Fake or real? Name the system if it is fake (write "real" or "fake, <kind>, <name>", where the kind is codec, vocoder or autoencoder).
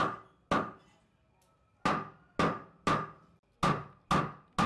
real